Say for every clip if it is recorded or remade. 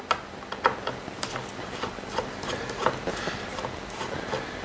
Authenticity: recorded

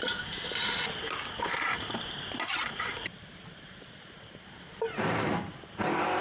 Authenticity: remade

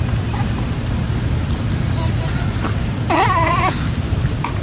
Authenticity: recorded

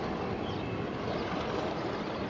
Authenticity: recorded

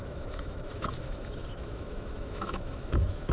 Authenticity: remade